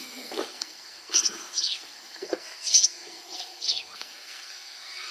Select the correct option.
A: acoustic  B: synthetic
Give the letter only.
B